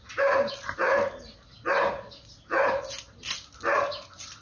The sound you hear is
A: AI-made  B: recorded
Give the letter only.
B